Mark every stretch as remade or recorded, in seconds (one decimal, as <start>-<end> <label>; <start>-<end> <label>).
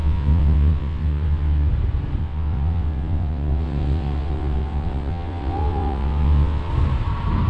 0.0-1.7 remade; 1.7-2.2 recorded; 2.2-6.7 remade; 6.7-7.5 recorded